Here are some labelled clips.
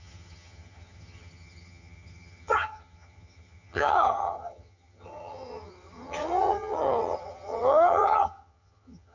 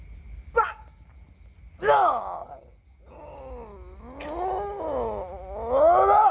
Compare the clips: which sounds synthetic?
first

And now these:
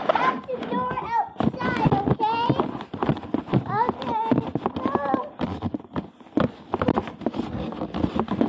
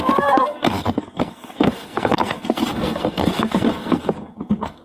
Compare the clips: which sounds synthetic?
second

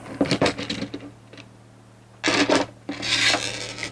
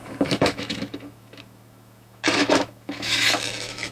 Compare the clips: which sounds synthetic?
second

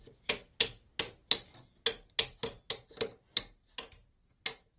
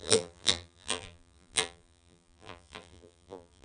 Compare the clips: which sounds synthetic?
second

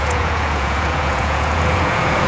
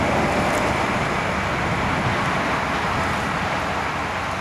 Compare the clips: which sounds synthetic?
first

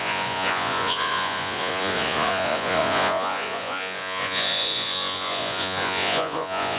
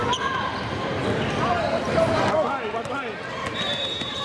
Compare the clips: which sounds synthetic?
first